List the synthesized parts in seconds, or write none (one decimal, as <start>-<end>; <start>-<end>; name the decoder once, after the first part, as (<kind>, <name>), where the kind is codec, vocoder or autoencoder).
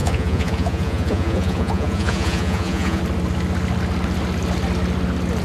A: 0.0-3.0 (vocoder, Vocos)